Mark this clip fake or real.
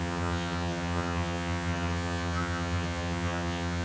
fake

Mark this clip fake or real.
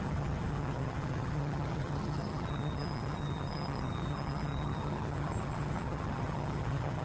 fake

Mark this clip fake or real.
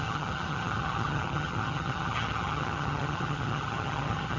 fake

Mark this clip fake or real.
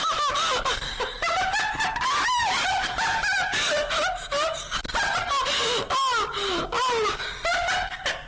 real